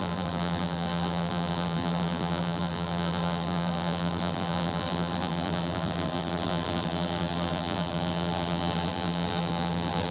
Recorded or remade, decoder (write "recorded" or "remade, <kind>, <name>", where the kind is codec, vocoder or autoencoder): remade, vocoder, BigVGAN v2